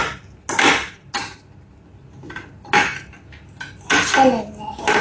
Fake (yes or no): no